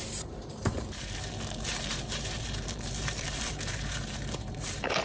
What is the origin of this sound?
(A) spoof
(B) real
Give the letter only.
A